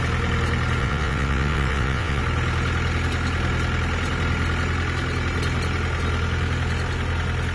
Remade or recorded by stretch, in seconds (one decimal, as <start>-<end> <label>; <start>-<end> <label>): 0.0-0.8 recorded; 0.8-2.2 remade; 2.2-7.5 recorded